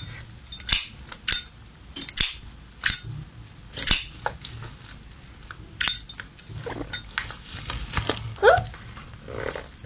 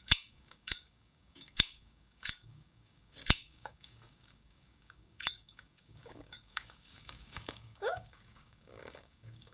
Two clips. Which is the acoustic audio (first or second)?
first